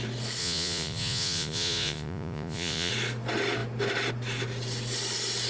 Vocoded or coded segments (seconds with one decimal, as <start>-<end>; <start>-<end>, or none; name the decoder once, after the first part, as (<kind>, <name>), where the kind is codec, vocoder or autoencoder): 0.4-2.9 (vocoder, Vocos)

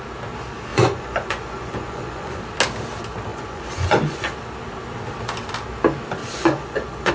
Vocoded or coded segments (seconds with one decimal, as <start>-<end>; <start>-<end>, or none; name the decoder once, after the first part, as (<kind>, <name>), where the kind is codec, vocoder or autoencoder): 0.7-2.4 (vocoder, Vocos); 3.3-4.3; 6.2-7.1

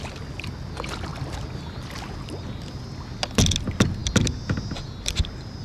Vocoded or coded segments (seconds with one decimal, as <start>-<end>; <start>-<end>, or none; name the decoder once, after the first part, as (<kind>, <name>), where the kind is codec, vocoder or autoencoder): none